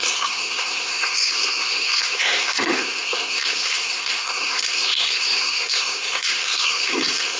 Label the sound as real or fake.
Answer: fake